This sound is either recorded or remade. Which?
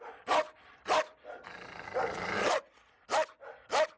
recorded